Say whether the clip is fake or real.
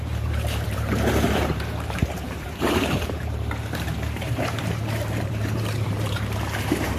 fake